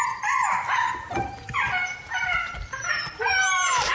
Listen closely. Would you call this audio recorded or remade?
recorded